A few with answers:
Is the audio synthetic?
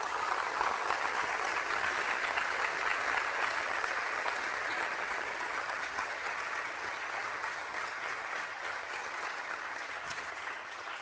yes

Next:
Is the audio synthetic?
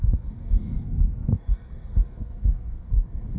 yes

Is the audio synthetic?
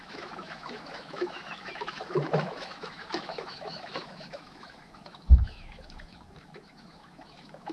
yes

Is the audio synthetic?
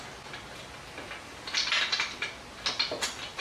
no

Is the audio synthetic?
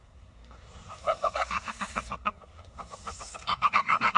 yes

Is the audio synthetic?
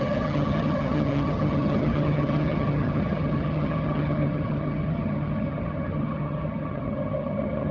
yes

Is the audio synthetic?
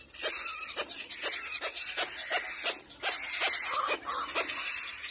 no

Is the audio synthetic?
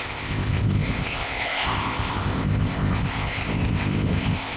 yes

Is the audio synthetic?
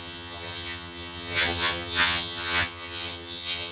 yes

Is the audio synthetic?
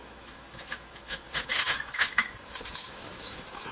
yes